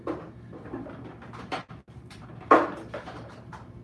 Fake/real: fake